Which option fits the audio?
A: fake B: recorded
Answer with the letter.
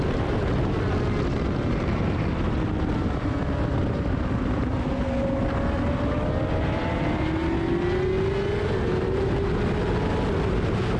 B